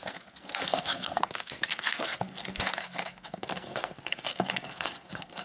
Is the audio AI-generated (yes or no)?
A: yes